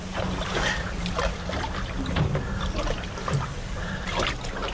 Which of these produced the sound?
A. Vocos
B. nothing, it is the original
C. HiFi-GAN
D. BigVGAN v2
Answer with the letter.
B